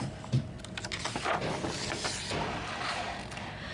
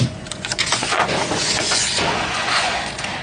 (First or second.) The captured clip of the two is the first